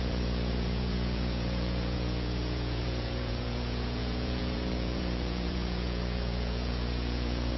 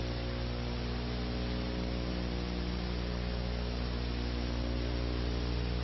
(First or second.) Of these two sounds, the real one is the second